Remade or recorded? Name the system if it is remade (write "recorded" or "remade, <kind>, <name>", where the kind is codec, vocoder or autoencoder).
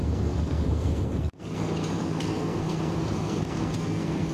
remade, codec, SNAC